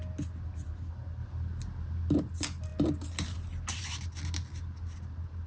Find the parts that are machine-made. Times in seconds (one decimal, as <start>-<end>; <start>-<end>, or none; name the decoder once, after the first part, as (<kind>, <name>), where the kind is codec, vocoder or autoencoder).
none

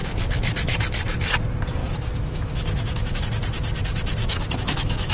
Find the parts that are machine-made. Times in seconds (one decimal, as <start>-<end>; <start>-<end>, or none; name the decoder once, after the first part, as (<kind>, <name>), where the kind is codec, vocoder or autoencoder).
1.8-3.2 (autoencoder, DAC-VAE); 4.2-5.1

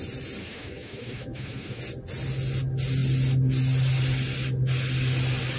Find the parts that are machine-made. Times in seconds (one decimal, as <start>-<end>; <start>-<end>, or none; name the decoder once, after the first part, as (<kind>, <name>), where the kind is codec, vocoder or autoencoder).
0.4-1.8 (autoencoder, DAC-VAE)

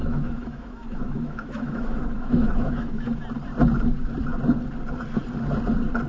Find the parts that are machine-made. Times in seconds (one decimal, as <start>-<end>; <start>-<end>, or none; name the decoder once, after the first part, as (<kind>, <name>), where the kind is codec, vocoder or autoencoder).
0.0-3.1 (autoencoder, DAC-VAE)

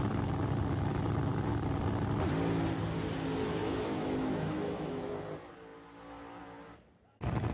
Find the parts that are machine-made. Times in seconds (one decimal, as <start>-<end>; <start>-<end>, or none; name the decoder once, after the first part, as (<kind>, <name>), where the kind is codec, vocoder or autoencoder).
3.6-5.1 (autoencoder, DAC-VAE)

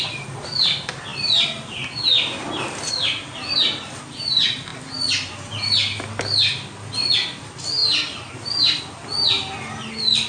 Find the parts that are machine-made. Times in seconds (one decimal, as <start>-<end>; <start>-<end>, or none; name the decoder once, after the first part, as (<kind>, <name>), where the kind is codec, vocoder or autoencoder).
none

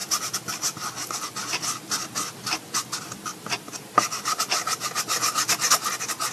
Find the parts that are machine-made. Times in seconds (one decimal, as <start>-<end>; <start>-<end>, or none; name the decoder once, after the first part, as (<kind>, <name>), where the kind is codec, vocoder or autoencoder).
none

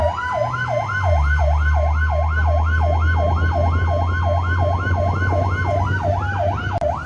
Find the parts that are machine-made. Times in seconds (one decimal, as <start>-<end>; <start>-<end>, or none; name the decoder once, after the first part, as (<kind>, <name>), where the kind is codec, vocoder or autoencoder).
none